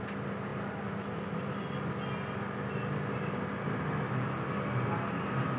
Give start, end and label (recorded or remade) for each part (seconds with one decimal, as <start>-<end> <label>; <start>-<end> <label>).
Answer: 0.0-5.6 recorded